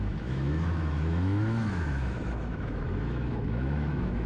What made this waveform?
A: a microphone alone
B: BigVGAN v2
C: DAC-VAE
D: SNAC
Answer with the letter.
C